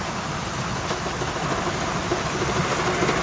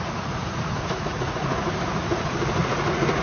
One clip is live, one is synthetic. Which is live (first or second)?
first